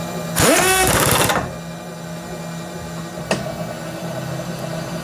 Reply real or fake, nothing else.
real